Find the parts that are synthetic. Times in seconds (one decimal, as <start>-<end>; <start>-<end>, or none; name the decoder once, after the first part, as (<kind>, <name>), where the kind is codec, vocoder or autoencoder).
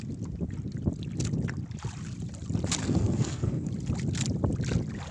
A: 2.8-3.7 (codec, SNAC)